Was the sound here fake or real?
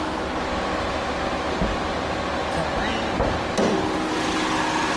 real